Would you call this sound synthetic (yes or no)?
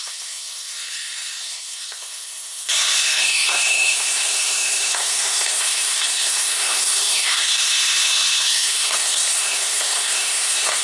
yes